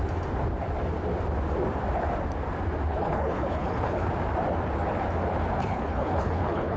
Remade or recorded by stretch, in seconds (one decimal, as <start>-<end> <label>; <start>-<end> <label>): 0.0-2.9 recorded; 2.9-4.1 remade; 4.1-5.6 recorded; 5.6-6.8 remade